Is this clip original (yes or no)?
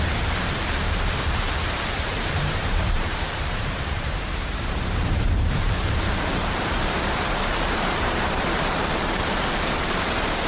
no